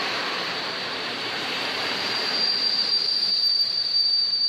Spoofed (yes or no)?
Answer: yes